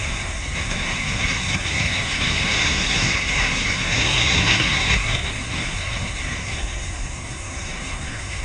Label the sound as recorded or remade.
remade